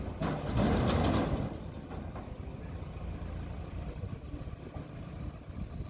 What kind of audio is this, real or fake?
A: real